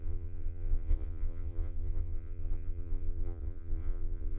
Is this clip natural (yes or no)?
no